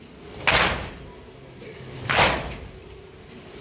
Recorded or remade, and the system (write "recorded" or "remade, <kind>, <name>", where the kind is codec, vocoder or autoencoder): recorded